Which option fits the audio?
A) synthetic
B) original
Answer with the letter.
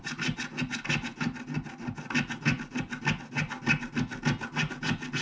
B